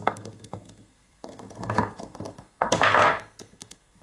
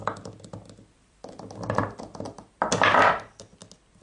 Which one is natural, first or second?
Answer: second